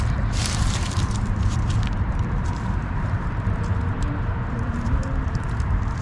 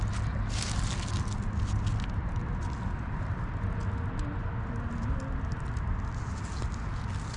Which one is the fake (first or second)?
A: first